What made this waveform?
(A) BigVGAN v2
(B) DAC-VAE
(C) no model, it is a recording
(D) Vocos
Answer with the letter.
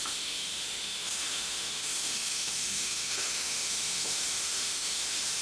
B